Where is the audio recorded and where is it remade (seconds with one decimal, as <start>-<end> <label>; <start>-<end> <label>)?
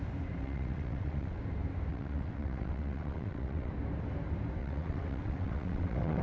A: 0.0-0.4 recorded; 0.4-1.4 remade; 1.4-1.9 recorded; 1.9-3.7 remade; 3.7-4.6 recorded; 4.6-6.2 remade